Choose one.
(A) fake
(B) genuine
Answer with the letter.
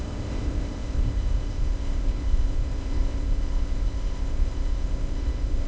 A